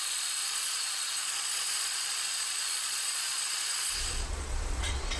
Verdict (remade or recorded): remade